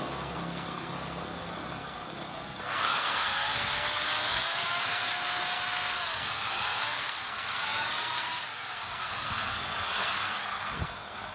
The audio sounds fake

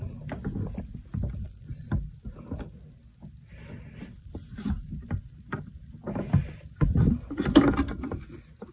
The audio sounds real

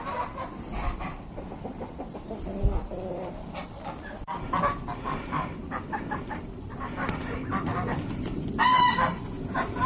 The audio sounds fake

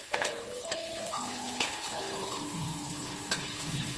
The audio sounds fake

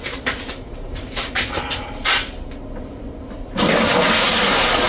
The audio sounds real